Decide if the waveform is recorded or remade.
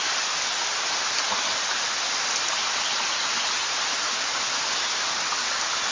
recorded